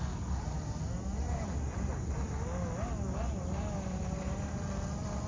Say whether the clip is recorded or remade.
recorded